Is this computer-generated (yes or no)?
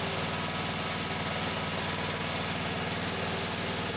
no